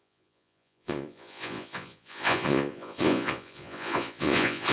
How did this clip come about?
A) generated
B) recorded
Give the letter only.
A